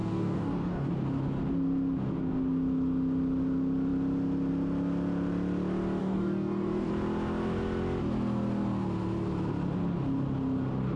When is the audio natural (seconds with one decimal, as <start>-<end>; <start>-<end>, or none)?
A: 0.9-6.0; 6.9-11.0